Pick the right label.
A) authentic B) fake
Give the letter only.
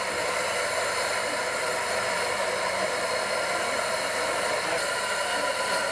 B